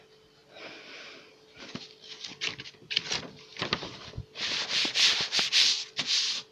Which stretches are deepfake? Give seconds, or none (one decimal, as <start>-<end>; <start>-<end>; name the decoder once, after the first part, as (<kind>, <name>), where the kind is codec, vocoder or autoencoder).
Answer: 3.5-4.6 (vocoder, BigVGAN v2)